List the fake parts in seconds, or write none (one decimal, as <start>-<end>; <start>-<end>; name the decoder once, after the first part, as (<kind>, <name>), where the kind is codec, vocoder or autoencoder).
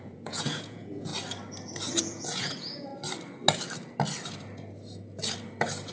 0.0-1.1 (vocoder, Vocos); 2.0-2.9